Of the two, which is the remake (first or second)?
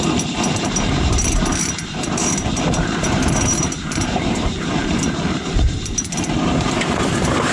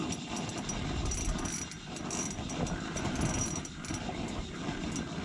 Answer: first